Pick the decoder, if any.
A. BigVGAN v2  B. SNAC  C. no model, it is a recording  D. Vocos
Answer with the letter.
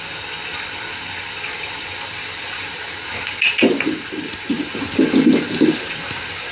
C